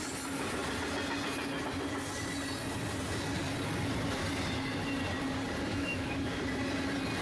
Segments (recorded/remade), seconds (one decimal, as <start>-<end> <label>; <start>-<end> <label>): 0.0-5.7 recorded; 5.7-6.4 remade; 6.4-7.2 recorded